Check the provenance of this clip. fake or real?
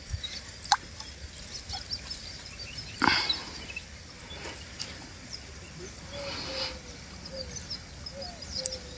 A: real